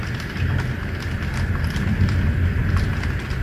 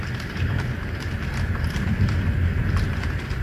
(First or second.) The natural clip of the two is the first